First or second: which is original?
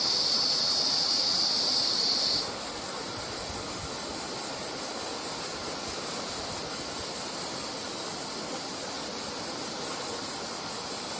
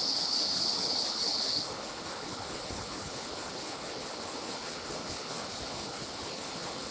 first